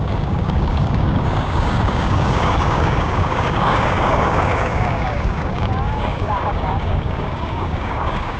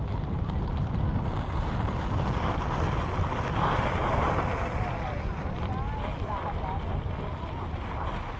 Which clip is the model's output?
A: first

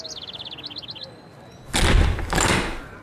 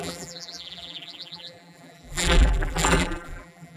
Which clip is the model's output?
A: second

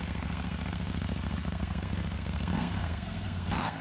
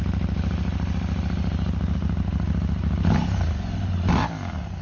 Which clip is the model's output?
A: first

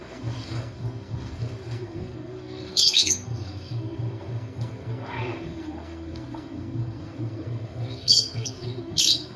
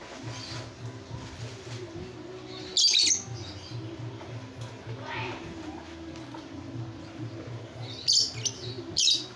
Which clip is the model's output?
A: first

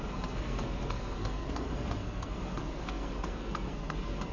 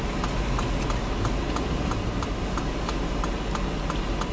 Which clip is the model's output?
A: first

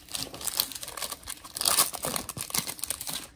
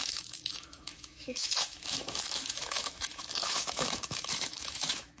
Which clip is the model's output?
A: second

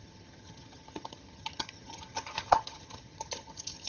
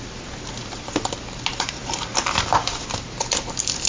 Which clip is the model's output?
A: first